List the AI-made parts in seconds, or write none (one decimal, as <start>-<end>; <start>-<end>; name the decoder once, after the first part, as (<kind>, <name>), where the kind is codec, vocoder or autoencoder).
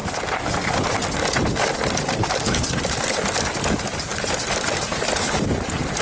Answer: none